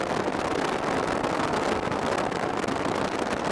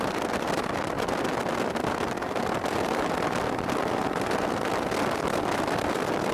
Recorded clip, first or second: first